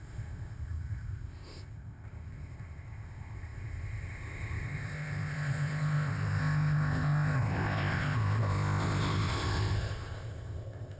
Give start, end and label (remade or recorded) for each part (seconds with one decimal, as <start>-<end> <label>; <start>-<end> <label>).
0.0-11.0 remade